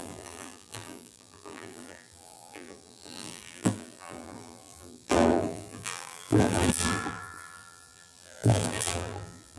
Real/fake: fake